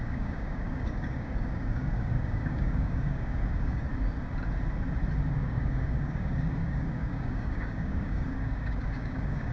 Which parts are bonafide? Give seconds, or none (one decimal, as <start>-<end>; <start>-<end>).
3.9-5.3